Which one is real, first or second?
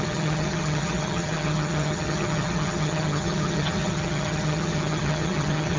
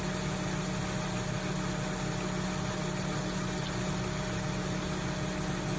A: second